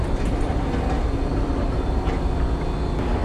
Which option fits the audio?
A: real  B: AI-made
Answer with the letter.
A